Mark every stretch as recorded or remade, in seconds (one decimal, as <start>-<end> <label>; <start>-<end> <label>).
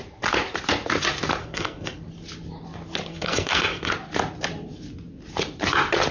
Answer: 0.0-1.4 recorded; 1.4-2.0 remade; 2.0-3.1 recorded; 3.1-3.9 remade; 3.9-6.1 recorded